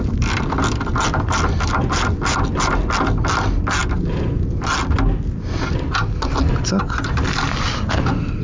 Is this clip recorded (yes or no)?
yes